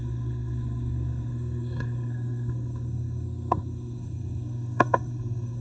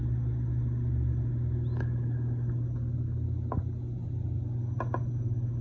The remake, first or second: first